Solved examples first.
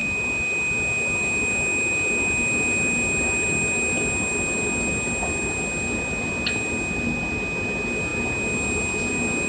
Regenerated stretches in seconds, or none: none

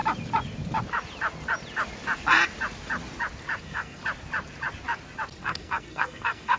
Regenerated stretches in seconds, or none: 3.6-4.0 (codec, SNAC); 5.4-6.6

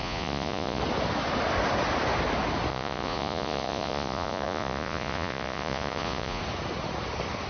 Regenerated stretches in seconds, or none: 0.0-0.8 (vocoder, Vocos); 2.7-6.4

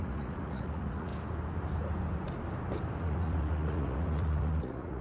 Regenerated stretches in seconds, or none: 0.0-1.1 (vocoder, Vocos); 3.0-5.0